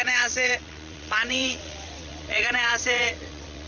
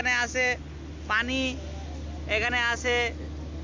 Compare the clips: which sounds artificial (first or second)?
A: first